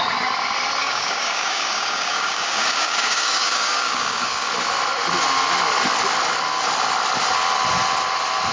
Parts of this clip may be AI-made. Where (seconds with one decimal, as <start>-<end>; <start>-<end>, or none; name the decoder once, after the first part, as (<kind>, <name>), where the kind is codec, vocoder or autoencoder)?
0.8-4.5 (codec, DAC)